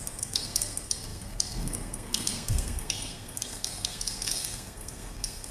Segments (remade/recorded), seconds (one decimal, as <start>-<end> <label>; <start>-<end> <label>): 0.0-5.5 remade